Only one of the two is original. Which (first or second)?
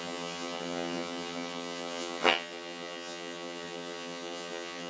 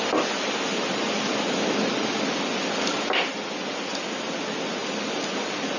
second